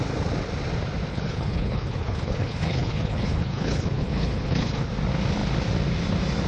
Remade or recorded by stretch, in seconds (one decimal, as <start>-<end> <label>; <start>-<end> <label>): 0.0-1.1 recorded; 1.1-4.9 remade; 4.9-6.5 recorded